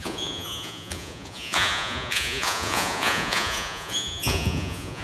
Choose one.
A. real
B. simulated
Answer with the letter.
B